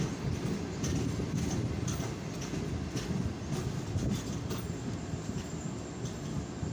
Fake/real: real